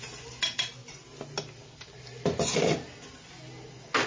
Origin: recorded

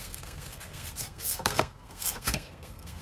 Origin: remade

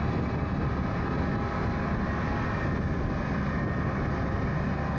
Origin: recorded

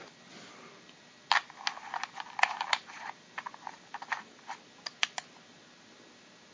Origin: recorded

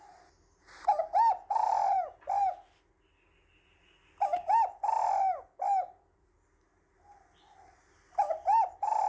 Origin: recorded